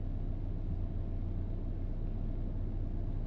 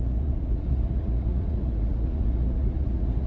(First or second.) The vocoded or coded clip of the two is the second